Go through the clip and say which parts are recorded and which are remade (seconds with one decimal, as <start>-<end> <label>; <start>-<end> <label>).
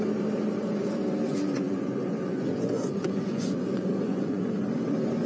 0.0-1.3 recorded; 1.3-4.5 remade; 4.5-5.3 recorded